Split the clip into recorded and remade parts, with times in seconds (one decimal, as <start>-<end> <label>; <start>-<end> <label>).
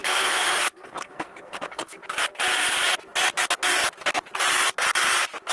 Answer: 0.0-1.9 remade; 1.9-5.5 recorded